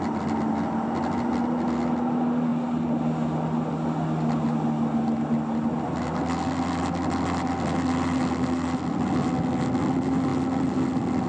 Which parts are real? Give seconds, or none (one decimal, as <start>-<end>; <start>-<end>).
0.0-11.3